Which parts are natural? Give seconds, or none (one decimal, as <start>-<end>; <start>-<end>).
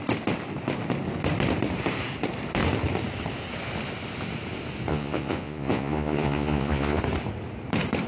0.0-4.9; 7.0-8.1